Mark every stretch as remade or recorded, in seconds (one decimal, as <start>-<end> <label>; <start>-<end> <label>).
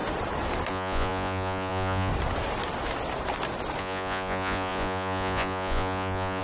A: 0.0-0.7 recorded; 0.7-2.1 remade; 2.1-3.8 recorded; 3.8-6.4 remade